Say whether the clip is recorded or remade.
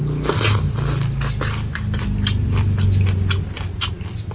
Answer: recorded